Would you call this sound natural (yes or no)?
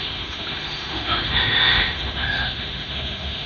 no